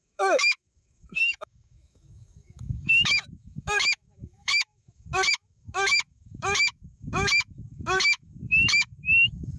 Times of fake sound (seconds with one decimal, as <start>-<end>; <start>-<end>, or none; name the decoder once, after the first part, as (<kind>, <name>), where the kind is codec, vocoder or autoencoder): 0.0-9.6 (autoencoder, DAC-VAE)